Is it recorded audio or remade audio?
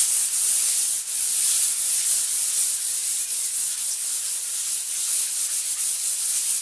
recorded